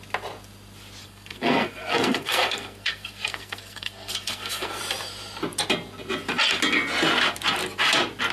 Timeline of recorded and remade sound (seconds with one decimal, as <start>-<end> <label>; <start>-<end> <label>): 0.0-1.0 recorded; 1.0-4.8 remade; 4.8-8.3 recorded

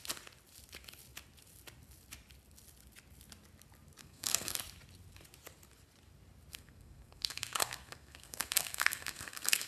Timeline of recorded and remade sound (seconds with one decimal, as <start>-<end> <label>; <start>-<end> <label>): 0.0-4.0 recorded; 4.0-4.6 remade; 4.6-6.5 recorded; 6.5-9.7 remade

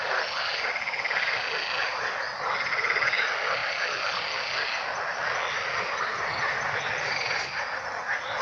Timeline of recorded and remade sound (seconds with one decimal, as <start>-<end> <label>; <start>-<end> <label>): 0.0-8.4 recorded

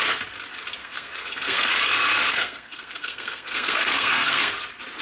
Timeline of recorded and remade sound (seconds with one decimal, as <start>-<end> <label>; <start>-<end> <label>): 0.0-0.8 recorded; 0.8-1.7 remade; 1.7-2.2 recorded; 2.2-4.5 remade; 4.5-5.0 recorded